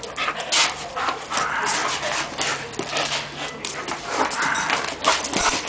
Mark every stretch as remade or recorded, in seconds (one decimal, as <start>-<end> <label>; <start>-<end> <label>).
0.0-5.7 recorded